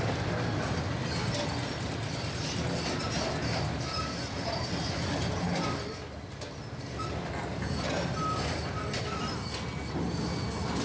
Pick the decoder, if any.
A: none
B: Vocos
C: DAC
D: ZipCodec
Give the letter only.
A